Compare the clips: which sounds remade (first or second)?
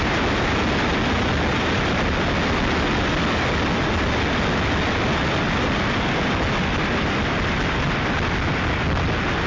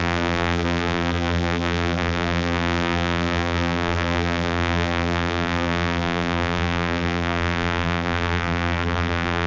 second